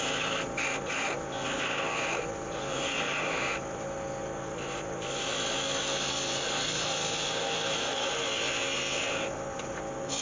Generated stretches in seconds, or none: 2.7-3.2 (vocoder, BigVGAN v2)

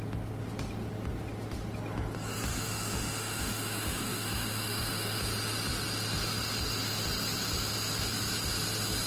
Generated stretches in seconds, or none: 2.5-5.2 (autoencoder, DAC-VAE)

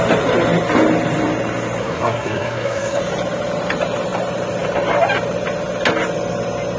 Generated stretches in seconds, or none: 1.8-3.0 (codec, SNAC)

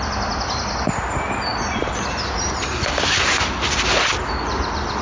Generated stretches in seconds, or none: none